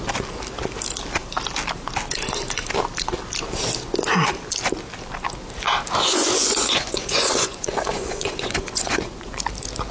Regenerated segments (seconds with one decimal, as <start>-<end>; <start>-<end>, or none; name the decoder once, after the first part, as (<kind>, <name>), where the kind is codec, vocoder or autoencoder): 6.0-9.4 (vocoder, Vocos)